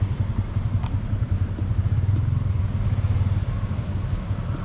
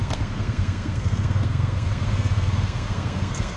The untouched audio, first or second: first